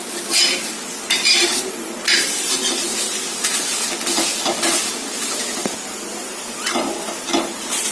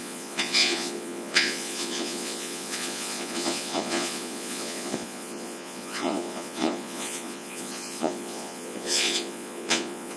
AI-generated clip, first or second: second